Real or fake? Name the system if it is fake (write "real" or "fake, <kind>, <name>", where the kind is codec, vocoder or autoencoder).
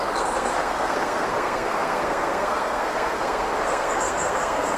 fake, codec, SNAC